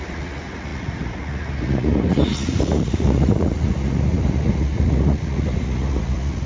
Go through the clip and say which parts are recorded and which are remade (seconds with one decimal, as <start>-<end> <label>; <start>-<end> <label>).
0.0-6.5 remade